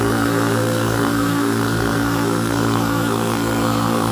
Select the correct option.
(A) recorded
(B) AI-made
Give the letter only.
B